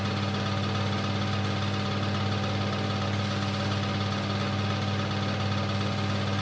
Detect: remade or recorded recorded